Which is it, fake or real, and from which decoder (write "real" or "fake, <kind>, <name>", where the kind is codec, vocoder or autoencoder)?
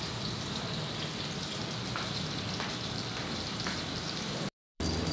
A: fake, vocoder, BigVGAN v2